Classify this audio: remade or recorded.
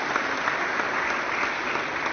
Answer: recorded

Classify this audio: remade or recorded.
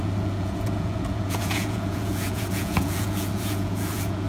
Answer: remade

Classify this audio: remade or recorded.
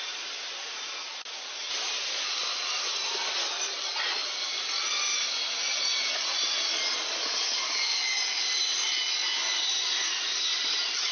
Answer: recorded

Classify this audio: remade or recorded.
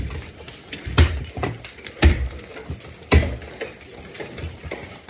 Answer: recorded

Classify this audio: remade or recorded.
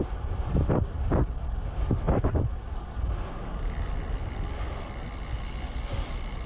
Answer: recorded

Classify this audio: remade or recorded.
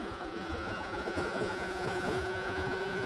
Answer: remade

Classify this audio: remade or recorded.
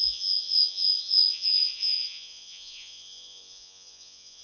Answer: remade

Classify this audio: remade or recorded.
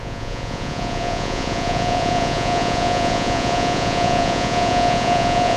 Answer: remade